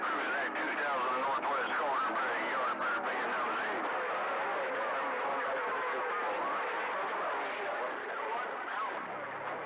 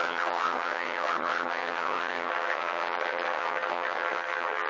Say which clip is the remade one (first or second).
second